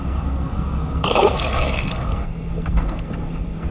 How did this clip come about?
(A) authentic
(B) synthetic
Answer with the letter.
B